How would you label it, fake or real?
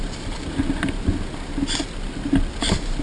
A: real